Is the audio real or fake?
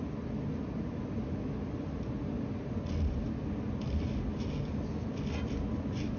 real